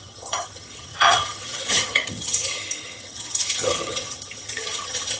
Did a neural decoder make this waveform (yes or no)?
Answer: yes